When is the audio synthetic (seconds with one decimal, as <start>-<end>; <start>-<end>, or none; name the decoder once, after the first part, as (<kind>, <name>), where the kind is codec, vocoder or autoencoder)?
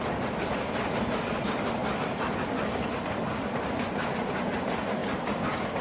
none